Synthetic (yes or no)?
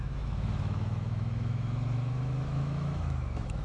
yes